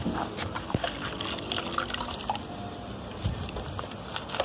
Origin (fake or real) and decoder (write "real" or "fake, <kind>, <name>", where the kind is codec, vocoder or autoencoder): real